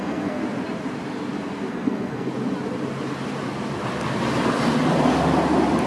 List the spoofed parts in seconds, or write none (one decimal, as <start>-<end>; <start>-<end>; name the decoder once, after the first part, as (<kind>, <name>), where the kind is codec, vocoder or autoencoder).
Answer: 0.0-0.4 (codec, SNAC); 1.7-2.3